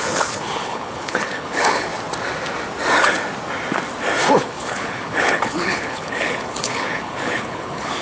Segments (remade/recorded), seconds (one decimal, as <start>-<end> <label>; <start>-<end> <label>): 0.0-1.9 remade; 1.9-4.3 recorded; 4.3-8.0 remade